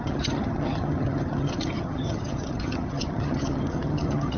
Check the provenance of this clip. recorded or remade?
remade